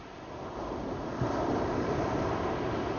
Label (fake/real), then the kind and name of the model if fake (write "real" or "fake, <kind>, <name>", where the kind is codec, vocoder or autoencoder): real